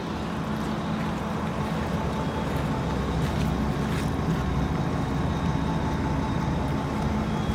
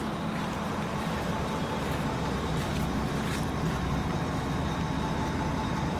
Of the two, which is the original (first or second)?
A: first